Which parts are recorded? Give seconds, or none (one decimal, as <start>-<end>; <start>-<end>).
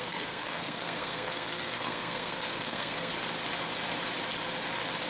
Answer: 3.1-5.1